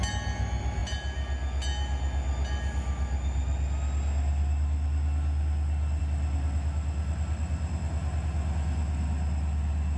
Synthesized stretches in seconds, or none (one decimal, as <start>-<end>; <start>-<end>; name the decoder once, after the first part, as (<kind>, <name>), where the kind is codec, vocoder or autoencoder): none